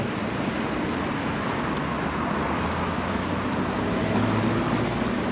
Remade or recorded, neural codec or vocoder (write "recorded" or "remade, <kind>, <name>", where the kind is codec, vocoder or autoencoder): recorded